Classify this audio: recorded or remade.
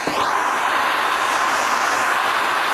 recorded